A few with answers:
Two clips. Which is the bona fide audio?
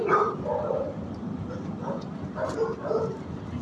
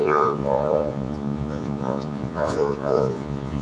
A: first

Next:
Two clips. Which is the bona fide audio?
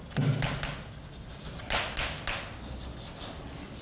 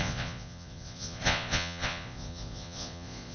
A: first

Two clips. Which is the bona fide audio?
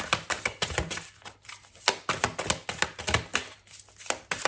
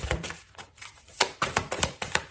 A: first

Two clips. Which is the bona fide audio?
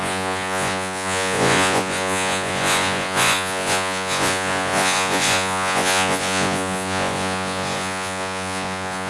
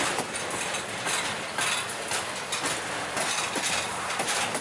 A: second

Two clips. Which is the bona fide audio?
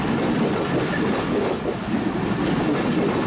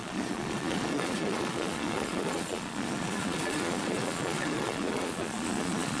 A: first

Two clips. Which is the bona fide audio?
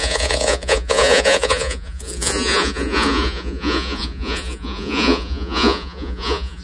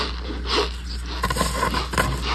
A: second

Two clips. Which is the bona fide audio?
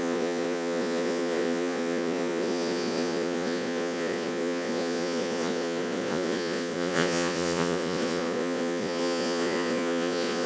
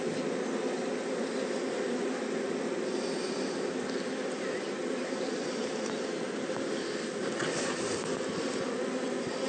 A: second